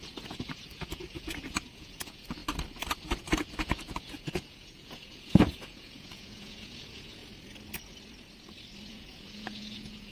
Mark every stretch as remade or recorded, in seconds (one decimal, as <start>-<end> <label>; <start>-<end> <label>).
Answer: 0.0-2.4 remade; 2.4-3.2 recorded; 3.2-7.2 remade; 7.2-8.9 recorded; 8.9-10.1 remade